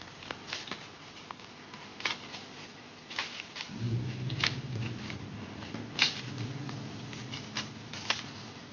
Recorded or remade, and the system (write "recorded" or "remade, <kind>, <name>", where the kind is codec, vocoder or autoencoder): recorded